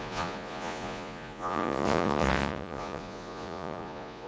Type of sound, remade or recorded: remade